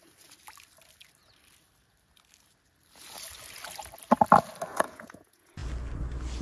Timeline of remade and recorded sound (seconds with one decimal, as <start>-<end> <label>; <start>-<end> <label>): 0.0-4.7 recorded; 4.7-5.5 remade; 5.5-6.4 recorded